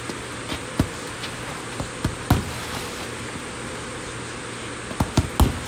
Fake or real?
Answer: real